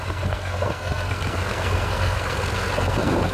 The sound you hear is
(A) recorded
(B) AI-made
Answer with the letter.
B